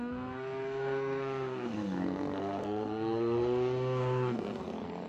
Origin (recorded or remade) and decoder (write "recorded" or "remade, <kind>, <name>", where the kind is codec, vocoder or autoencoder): remade, codec, SNAC